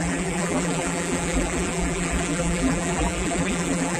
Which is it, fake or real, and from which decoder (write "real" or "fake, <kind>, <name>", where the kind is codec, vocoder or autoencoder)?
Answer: fake, vocoder, BigVGAN v2